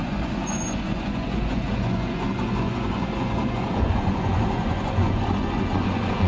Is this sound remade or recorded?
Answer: remade